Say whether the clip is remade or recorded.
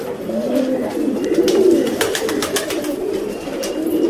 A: remade